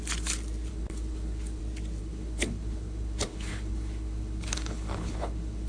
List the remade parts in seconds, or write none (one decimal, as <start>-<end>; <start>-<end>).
0.7-1.6; 2.0-5.7